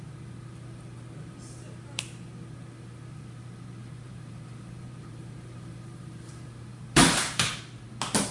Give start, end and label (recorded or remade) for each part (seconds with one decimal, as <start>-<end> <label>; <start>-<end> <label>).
0.0-3.8 recorded; 3.8-7.6 remade; 7.6-8.3 recorded